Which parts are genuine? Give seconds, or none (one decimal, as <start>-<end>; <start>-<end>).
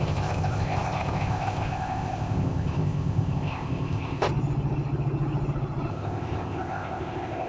4.3-5.9